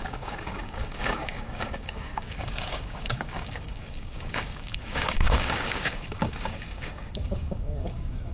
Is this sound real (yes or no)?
no